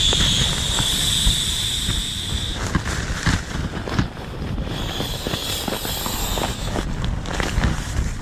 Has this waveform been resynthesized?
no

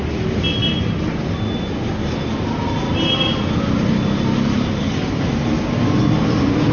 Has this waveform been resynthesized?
no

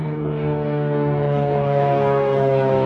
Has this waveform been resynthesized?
yes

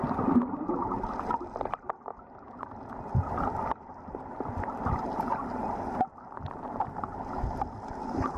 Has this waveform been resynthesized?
no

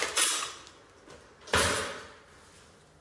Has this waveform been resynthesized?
no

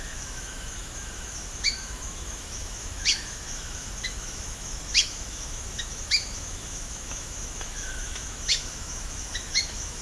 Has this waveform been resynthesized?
yes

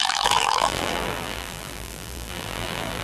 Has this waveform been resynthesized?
yes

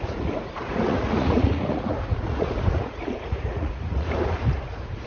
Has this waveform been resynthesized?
yes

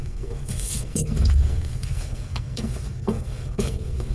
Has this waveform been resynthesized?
yes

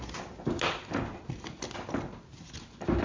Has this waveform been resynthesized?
no